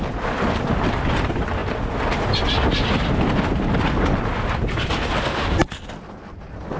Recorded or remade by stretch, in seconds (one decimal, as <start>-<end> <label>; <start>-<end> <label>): 0.0-6.8 recorded